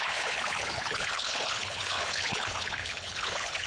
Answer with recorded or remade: remade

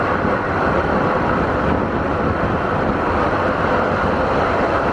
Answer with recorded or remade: recorded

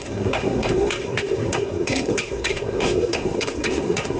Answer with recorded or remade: remade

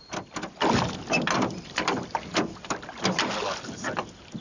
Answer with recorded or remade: recorded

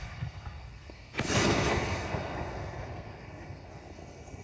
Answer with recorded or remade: remade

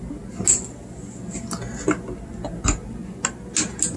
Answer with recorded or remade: recorded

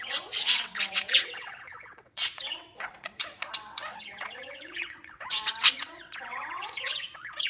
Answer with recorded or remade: remade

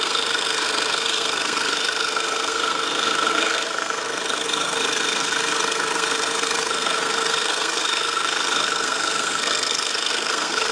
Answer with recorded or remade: remade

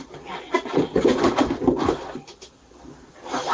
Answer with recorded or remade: recorded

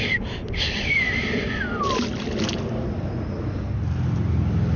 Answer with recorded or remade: recorded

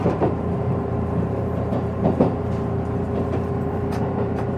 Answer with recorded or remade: remade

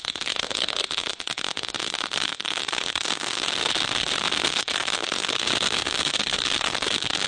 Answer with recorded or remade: remade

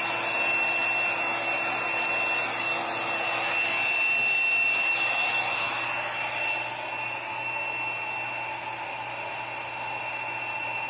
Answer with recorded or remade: recorded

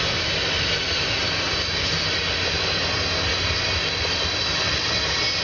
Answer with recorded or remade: recorded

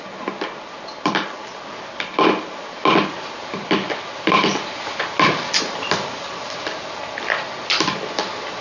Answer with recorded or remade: recorded